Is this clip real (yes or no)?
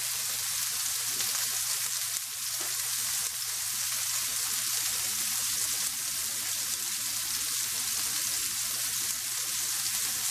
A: yes